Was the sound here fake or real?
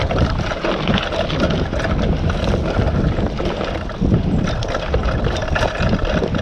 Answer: real